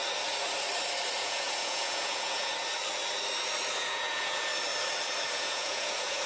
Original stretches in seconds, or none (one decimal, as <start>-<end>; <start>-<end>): 0.0-1.2; 2.5-3.7; 4.5-5.3